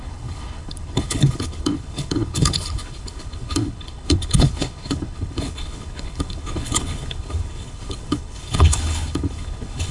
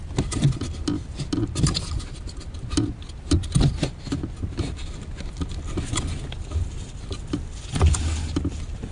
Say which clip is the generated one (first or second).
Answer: first